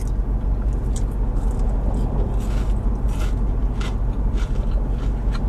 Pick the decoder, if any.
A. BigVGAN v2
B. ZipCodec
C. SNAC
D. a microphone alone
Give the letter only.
D